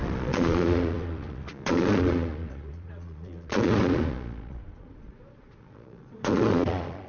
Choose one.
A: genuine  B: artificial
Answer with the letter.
B